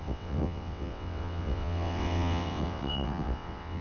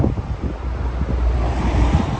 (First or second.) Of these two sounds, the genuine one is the second